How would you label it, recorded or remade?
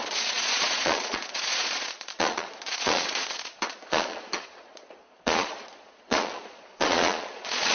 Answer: remade